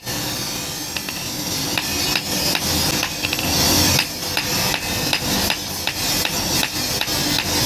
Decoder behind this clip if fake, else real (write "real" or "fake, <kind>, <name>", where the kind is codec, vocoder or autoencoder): real